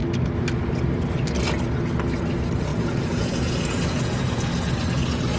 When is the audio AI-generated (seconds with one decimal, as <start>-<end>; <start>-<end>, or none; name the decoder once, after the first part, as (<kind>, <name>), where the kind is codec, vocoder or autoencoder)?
2.7-4.5 (vocoder, Vocos)